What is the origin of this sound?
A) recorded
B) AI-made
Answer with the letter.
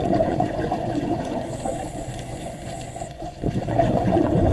B